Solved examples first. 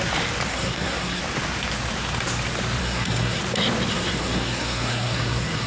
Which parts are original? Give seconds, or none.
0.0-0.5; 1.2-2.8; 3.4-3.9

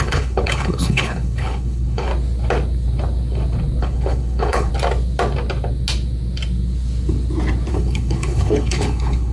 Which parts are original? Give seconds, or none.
2.1-3.8; 4.7-7.7

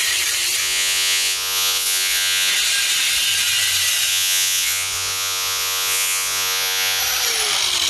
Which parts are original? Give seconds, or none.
0.0-0.6; 2.5-4.1; 7.0-7.9

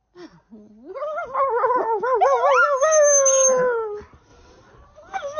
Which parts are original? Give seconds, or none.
0.0-5.4

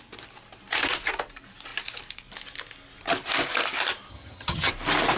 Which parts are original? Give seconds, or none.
0.0-4.1; 4.7-5.2

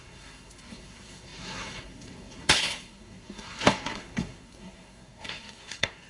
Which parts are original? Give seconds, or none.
none

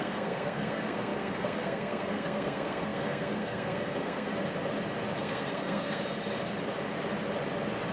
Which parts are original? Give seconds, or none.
4.3-5.2; 6.0-7.9